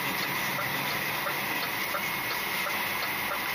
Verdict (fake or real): real